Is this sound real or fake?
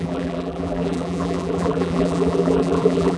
fake